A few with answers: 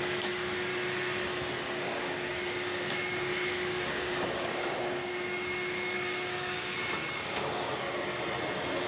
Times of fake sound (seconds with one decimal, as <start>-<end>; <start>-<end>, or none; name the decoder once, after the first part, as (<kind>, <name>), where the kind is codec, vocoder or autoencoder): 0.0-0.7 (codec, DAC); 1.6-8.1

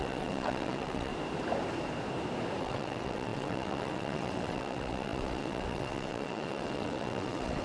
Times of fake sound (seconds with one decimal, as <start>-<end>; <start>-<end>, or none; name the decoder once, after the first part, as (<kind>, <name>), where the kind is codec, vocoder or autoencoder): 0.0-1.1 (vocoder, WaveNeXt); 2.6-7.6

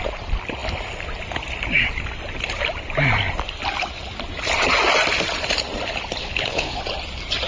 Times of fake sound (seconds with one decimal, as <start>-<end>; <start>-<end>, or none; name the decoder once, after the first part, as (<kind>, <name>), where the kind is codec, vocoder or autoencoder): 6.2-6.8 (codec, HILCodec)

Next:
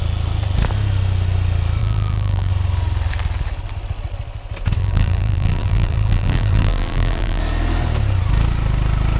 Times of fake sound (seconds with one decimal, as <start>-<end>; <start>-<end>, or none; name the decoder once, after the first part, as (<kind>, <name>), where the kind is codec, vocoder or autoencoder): 1.8-2.5 (vocoder, BigVGAN v2); 4.8-7.4

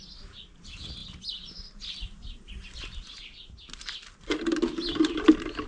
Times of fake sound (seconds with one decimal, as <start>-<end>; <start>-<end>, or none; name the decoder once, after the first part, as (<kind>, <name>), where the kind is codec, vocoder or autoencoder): none

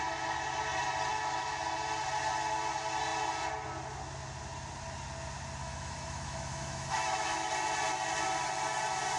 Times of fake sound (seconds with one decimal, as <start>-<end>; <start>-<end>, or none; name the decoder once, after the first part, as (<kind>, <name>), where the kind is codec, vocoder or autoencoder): 1.1-1.6 (autoencoder, DAC-VAE); 5.6-7.5

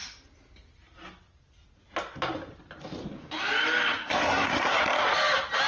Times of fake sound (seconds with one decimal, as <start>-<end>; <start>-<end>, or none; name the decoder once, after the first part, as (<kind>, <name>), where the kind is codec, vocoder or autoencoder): 4.0-4.8 (codec, SNAC)

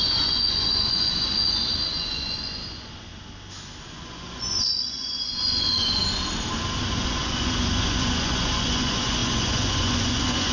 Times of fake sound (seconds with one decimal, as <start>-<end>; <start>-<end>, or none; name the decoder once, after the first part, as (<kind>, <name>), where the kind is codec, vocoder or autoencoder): 0.0-3.1 (vocoder, Vocos); 3.8-6.0; 6.8-10.5